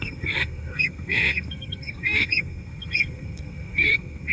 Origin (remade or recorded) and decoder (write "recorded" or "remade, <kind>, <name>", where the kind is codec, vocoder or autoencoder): remade, codec, SNAC